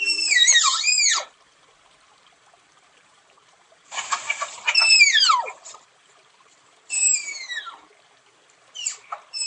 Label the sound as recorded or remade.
remade